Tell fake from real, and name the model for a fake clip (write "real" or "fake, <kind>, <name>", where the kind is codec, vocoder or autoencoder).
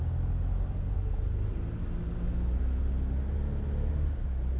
real